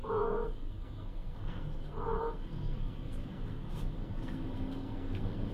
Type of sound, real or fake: fake